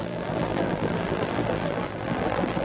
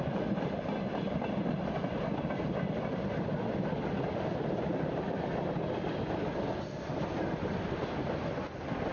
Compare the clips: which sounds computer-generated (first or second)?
first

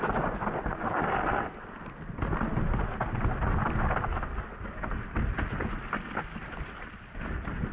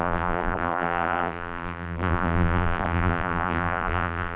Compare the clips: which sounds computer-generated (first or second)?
second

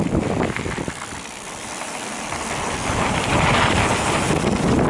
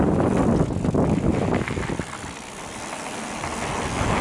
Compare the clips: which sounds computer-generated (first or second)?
first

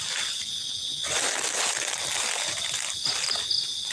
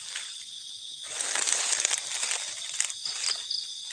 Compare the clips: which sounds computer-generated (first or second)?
second